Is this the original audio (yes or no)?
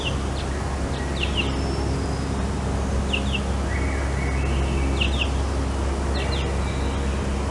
yes